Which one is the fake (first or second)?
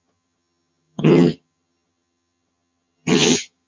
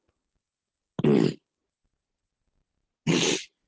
first